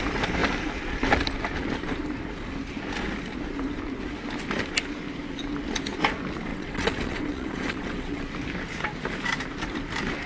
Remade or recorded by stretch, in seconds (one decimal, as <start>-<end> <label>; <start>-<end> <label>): 0.0-6.5 recorded; 6.5-8.2 remade; 8.2-10.3 recorded